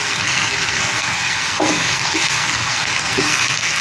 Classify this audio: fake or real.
fake